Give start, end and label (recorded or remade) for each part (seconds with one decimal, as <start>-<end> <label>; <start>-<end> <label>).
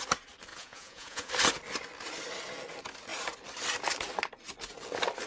0.0-0.5 recorded; 0.5-1.3 remade; 1.3-5.3 recorded